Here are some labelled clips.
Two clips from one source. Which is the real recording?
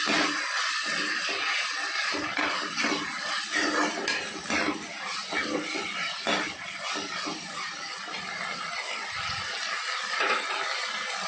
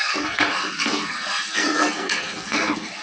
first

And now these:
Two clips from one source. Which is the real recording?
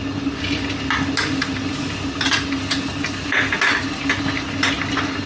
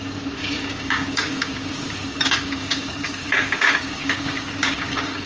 first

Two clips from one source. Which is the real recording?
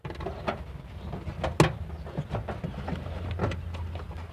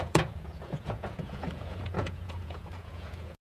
first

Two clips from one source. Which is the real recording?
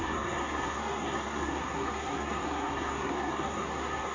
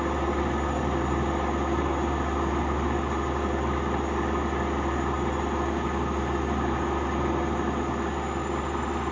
second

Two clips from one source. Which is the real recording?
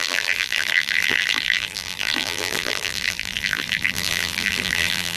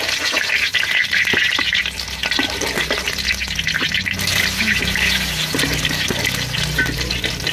second